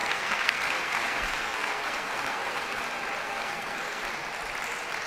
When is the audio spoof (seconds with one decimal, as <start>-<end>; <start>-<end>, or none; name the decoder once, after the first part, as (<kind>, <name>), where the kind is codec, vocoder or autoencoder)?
0.0-2.8 (codec, SNAC); 3.2-4.1